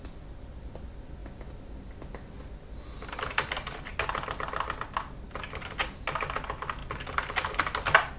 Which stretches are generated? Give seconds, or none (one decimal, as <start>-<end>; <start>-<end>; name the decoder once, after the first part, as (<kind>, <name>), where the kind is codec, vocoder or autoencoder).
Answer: none